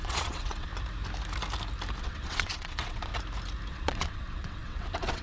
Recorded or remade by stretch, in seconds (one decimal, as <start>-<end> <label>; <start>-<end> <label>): 0.0-0.7 remade; 0.7-2.0 recorded; 2.0-3.1 remade; 3.1-3.7 recorded; 3.7-5.2 remade